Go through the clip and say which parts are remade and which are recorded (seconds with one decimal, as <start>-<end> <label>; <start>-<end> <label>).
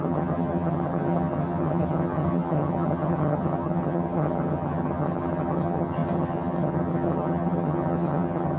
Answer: 0.0-8.6 remade